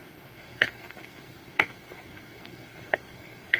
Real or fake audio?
fake